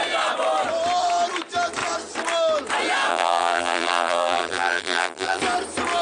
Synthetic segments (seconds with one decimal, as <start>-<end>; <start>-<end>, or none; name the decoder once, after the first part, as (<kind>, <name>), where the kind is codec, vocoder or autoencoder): 3.1-5.4 (vocoder, BigVGAN v2)